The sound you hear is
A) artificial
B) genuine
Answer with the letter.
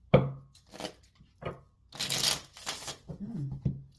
B